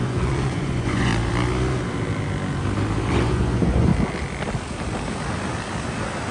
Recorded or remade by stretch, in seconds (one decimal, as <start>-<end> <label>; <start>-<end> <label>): 0.0-1.1 remade; 1.1-3.1 recorded; 3.1-3.9 remade; 3.9-6.3 recorded